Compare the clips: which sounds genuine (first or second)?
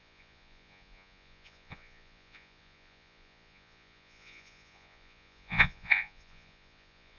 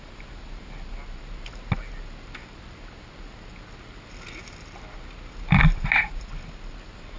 second